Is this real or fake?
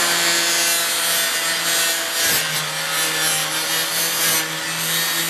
real